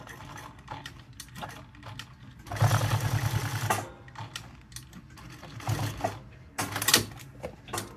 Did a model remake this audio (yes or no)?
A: no